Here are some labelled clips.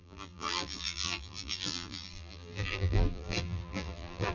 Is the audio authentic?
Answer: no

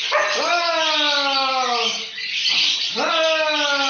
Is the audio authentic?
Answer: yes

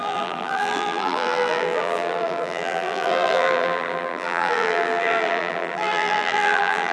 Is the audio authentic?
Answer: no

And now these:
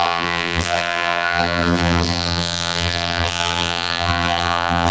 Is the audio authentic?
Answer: no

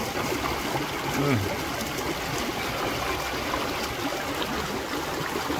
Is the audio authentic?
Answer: yes